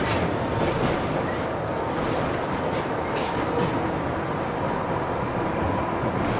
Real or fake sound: real